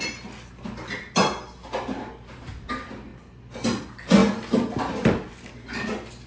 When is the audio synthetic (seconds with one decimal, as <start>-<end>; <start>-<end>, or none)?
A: none